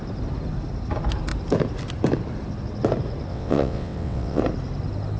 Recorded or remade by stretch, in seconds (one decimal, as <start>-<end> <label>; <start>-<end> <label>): 0.0-3.3 recorded; 3.3-4.4 remade; 4.4-5.2 recorded